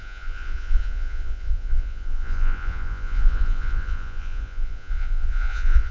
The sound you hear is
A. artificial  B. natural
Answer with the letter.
A